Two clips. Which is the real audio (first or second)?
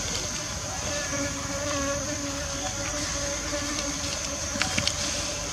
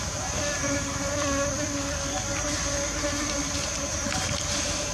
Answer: second